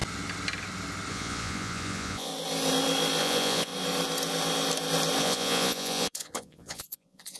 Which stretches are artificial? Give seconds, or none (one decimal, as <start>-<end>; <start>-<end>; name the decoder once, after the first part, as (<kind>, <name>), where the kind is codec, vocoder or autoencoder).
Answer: 1.1-2.3 (vocoder, Vocos); 3.2-3.7; 5.2-7.4